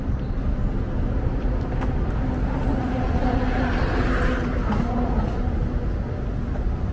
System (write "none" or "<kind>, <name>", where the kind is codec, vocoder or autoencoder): none